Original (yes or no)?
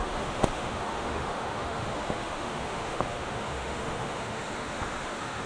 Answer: no